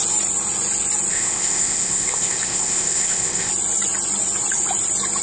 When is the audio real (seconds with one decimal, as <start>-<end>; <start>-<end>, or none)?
0.0-1.1; 3.5-5.2

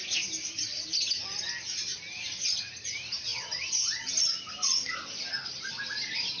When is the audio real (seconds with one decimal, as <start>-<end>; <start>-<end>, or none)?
0.0-6.4